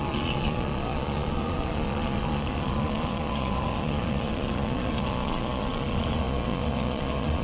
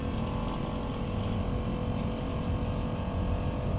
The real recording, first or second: second